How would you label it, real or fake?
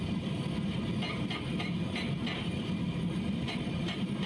real